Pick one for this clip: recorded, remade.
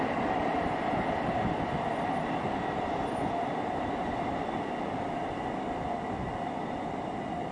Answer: recorded